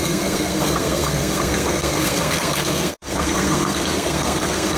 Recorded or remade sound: remade